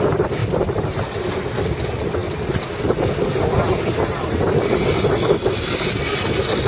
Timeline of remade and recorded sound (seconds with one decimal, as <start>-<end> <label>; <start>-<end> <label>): 0.0-0.4 recorded; 0.4-1.2 remade; 1.2-6.7 recorded